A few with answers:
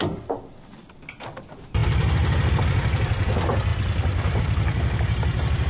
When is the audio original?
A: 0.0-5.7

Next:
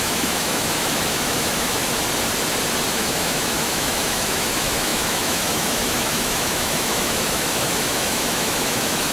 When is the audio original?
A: 1.8-2.9

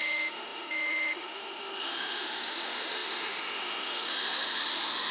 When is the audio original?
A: none

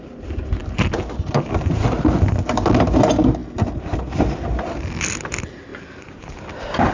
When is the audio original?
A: 0.0-6.9

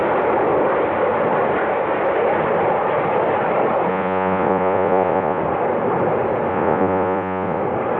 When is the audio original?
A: 0.0-3.9; 5.4-6.5; 7.6-8.0

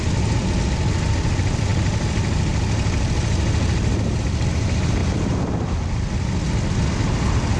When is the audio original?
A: 0.0-7.6